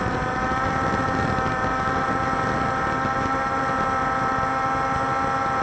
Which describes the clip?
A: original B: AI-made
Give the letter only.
A